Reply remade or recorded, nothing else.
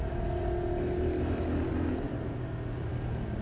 recorded